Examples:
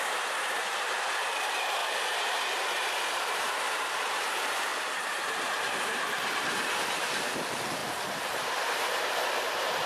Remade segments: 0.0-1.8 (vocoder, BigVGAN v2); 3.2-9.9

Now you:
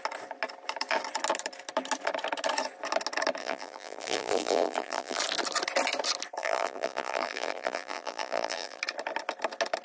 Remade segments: 3.4-5.2 (vocoder, BigVGAN v2); 6.4-8.8